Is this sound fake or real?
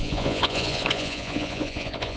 fake